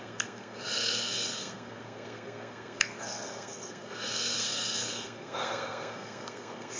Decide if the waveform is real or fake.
fake